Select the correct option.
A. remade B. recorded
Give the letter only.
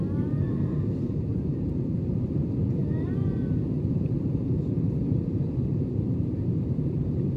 A